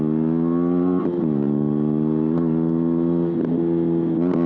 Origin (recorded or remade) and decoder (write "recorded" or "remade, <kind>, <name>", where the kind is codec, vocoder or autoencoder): recorded